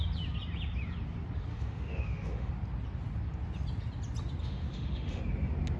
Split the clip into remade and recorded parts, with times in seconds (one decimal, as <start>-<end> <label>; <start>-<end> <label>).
0.0-1.5 recorded; 1.5-2.5 remade; 2.5-4.4 recorded; 4.4-5.2 remade; 5.2-5.8 recorded